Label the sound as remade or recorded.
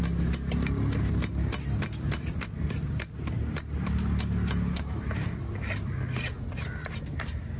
recorded